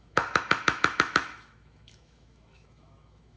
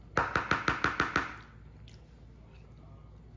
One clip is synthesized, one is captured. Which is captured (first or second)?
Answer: second